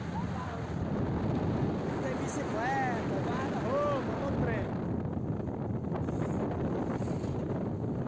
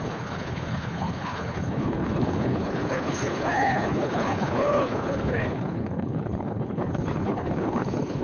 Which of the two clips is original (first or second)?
first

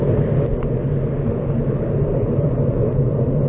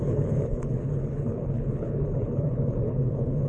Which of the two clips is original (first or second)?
first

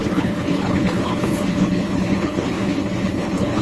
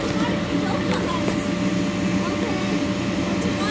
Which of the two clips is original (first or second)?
second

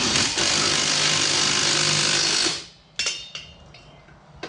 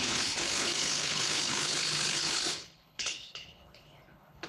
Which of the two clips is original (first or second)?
first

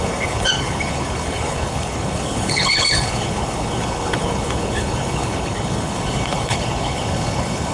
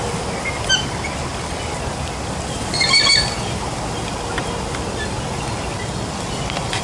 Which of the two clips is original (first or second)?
second